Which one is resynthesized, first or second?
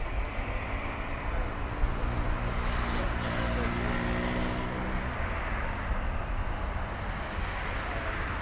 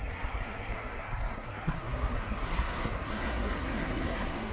second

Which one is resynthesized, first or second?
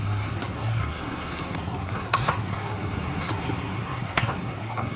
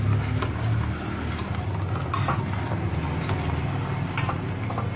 first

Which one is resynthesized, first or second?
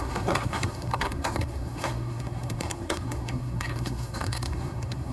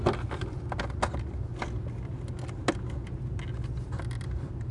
first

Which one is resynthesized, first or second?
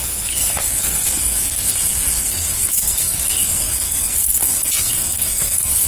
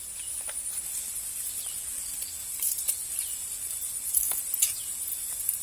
first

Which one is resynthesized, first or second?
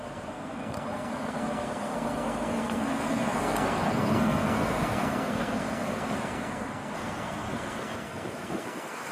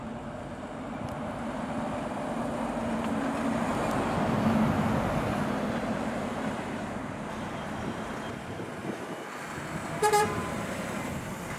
first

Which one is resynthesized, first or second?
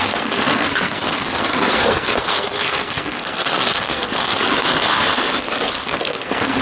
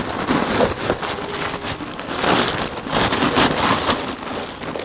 first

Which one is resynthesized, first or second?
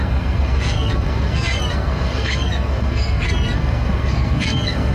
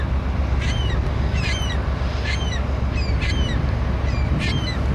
first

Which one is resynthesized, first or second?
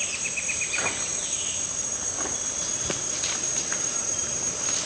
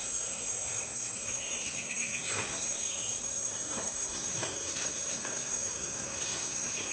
second